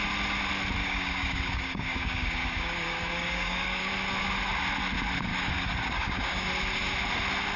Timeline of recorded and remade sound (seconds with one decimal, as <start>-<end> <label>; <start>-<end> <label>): 0.0-0.8 recorded; 0.8-3.9 remade; 3.9-5.3 recorded; 5.3-6.5 remade; 6.5-7.6 recorded